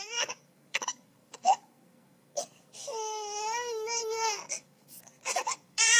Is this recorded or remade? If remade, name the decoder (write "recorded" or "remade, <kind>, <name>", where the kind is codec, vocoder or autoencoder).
remade, codec, SNAC